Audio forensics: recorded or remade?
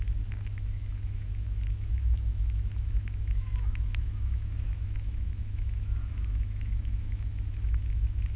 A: remade